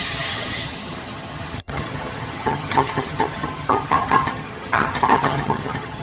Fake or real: fake